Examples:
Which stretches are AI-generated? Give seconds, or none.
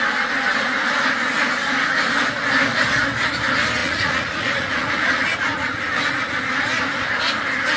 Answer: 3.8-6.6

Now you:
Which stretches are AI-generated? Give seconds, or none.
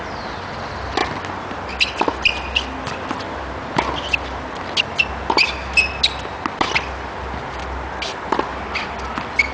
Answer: none